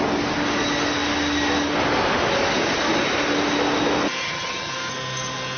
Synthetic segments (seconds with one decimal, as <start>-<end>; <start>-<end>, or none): 4.2-4.7